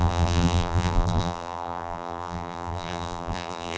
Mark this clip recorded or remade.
remade